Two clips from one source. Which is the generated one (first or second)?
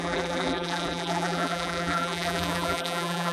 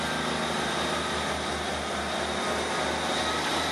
first